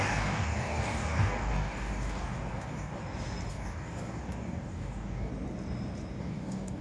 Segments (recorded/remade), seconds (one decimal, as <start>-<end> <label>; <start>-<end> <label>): 0.0-3.0 remade; 3.0-3.5 recorded; 3.5-5.3 remade; 5.3-6.2 recorded; 6.2-6.8 remade